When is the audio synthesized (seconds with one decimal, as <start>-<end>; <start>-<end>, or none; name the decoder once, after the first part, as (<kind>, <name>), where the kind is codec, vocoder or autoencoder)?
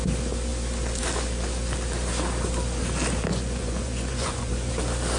3.3-4.7 (vocoder, Vocos)